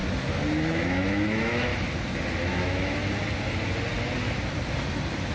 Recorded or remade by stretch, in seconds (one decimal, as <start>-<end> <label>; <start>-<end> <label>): 0.0-0.7 recorded; 0.7-1.7 remade; 1.7-2.5 recorded; 2.5-3.0 remade; 3.0-5.3 recorded